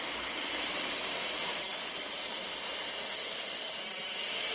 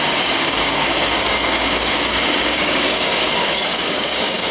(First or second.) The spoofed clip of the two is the second